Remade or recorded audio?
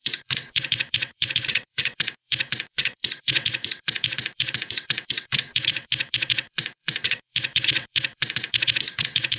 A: remade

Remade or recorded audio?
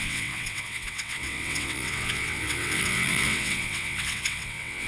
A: remade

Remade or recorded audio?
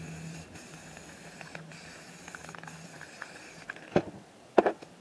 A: recorded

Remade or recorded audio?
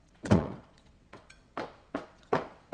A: remade